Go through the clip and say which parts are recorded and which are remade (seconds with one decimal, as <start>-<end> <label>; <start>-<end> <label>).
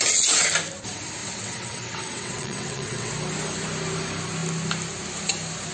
0.0-1.2 recorded; 1.2-3.1 remade; 3.1-5.7 recorded